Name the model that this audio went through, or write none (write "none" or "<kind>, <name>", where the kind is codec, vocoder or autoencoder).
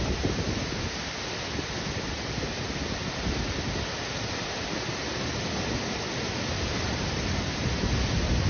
none